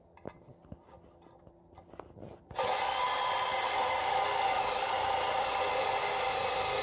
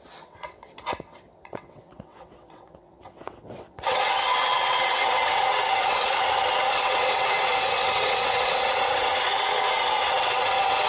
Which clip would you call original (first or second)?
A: first